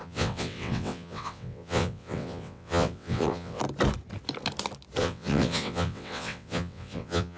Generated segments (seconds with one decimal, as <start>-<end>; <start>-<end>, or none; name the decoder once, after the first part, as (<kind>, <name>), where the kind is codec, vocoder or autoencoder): 0.0-3.6 (vocoder, WaveNeXt); 5.0-7.4